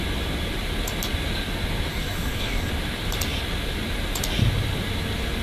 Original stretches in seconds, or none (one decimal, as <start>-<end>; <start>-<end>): 0.0-1.9; 2.7-5.4